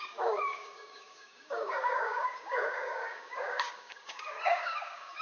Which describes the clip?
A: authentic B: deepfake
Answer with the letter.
B